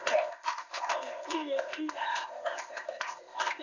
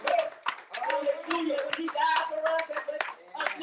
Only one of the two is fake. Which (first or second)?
first